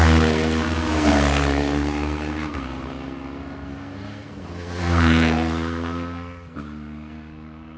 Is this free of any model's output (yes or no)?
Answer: no